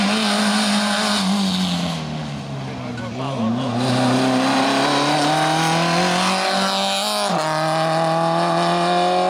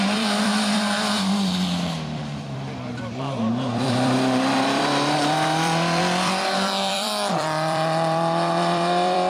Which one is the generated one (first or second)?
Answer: second